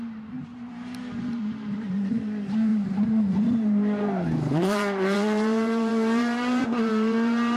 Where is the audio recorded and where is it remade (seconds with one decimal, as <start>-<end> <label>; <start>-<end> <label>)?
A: 0.0-0.5 recorded; 0.5-2.1 remade; 2.1-2.7 recorded; 2.7-7.6 remade